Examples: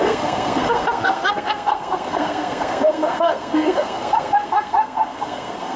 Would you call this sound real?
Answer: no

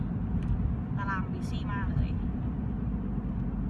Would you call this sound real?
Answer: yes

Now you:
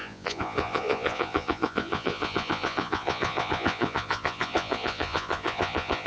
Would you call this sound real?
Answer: no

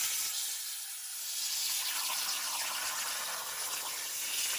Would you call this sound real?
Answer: yes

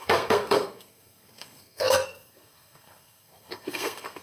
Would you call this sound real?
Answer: no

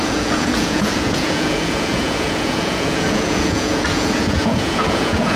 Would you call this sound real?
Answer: no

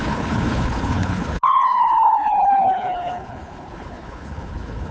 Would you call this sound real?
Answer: no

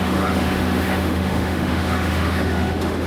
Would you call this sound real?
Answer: no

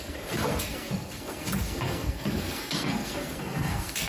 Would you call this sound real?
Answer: no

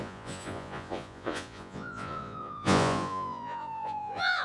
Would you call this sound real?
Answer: no